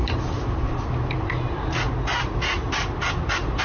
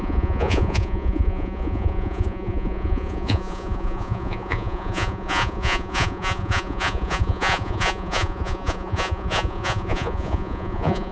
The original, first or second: first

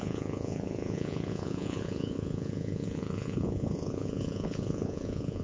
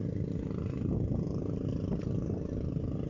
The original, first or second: second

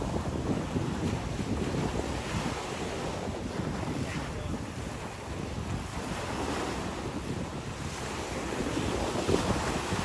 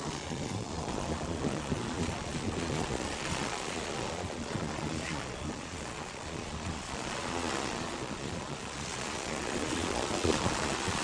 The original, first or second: first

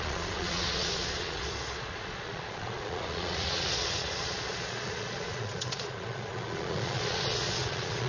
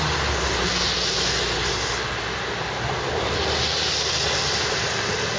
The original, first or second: second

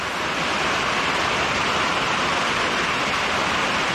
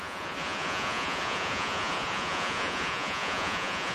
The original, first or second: first